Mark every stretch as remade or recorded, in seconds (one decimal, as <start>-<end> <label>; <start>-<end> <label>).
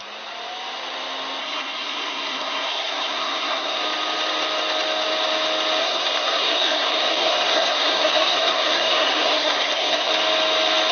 0.0-1.4 recorded; 1.4-3.8 remade; 3.8-5.8 recorded; 5.8-10.1 remade; 10.1-10.9 recorded